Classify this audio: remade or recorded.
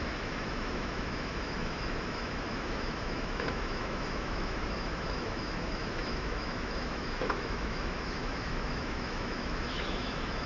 remade